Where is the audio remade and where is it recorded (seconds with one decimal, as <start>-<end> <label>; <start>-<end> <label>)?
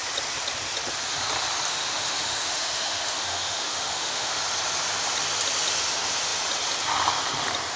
0.0-1.7 recorded; 1.7-4.4 remade; 4.4-7.8 recorded